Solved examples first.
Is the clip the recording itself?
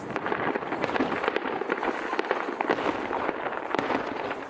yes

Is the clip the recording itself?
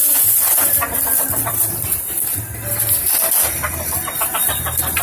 no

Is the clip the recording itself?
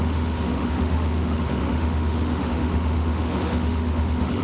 no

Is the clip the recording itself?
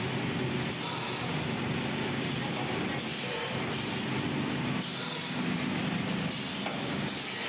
yes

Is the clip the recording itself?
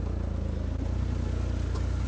yes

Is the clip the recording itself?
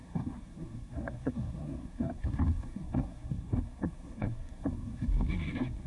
no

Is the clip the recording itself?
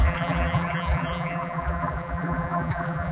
no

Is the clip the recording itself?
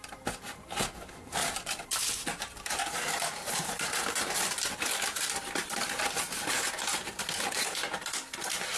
no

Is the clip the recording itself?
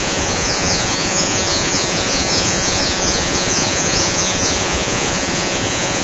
no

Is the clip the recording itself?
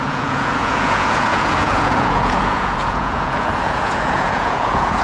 no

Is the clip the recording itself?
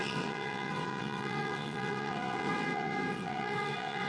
no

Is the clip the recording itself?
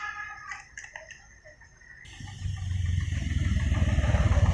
yes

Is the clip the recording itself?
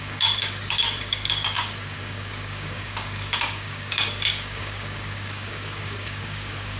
no